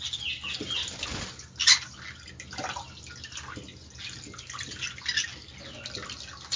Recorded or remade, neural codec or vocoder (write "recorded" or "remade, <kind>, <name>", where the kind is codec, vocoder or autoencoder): recorded